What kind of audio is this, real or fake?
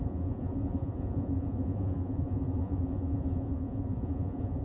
fake